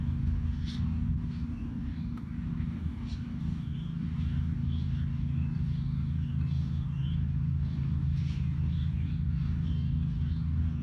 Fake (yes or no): yes